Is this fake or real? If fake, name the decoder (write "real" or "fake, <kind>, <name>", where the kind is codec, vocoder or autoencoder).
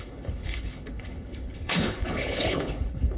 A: fake, codec, HILCodec